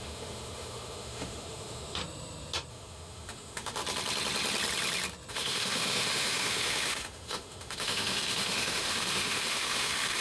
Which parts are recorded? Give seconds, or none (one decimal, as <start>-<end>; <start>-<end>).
2.0-2.7; 3.8-5.3